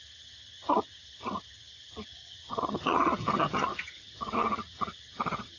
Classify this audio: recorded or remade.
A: remade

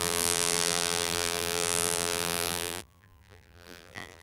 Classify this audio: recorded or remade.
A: remade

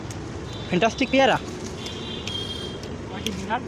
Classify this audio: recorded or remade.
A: recorded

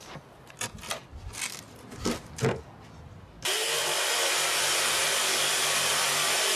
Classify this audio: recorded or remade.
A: recorded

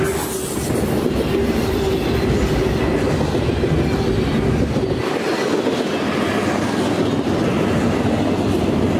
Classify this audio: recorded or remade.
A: recorded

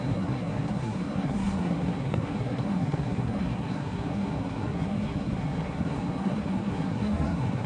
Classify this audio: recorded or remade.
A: remade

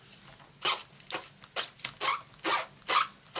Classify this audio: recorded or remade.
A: recorded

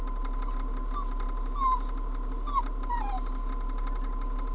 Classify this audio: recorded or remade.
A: recorded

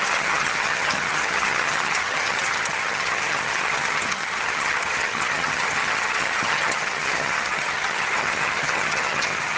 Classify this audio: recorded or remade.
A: remade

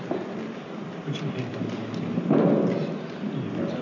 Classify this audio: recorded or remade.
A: recorded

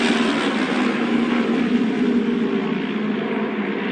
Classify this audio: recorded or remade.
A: recorded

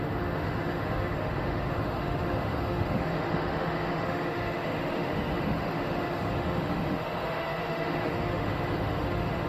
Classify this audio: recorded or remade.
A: remade